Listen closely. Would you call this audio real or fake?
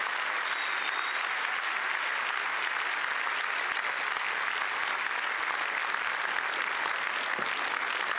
real